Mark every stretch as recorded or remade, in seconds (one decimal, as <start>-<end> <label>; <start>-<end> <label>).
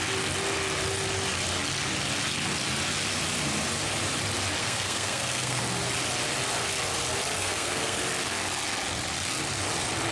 0.0-4.6 recorded; 4.6-5.6 remade; 5.6-7.4 recorded; 7.4-8.0 remade; 8.0-10.1 recorded